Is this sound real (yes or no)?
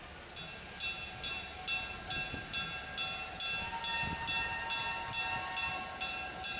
yes